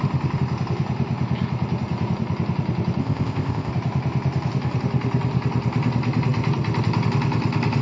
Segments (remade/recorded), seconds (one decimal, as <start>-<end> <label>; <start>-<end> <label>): 0.0-3.0 recorded; 3.0-3.7 remade; 3.7-7.8 recorded